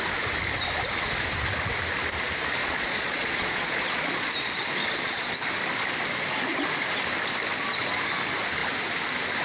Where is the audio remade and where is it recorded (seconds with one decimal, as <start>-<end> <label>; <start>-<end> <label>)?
0.0-2.6 recorded; 2.6-4.3 remade; 4.3-4.8 recorded; 4.8-5.3 remade; 5.3-9.4 recorded